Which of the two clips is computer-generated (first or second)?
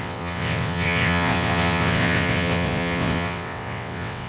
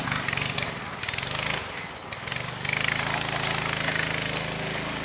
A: first